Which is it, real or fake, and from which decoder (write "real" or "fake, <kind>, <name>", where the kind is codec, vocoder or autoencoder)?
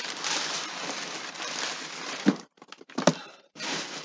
real